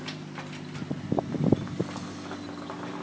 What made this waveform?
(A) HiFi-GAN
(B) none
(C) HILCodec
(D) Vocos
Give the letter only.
B